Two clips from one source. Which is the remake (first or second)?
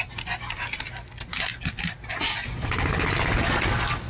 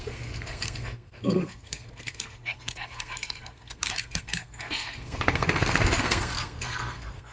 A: second